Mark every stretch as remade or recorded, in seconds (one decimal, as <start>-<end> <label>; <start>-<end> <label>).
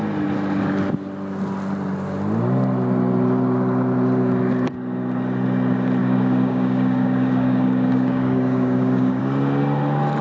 0.0-6.0 recorded; 6.0-9.2 remade; 9.2-10.2 recorded